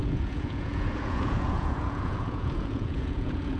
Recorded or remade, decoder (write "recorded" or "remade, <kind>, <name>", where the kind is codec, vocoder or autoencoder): remade, vocoder, Vocos